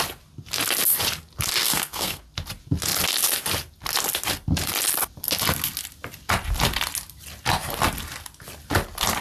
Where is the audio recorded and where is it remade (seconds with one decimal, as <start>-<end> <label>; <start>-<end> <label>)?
0.0-1.6 recorded; 1.6-2.2 remade; 2.2-9.2 recorded